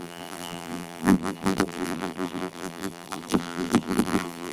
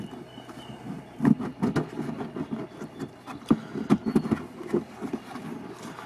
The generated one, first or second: first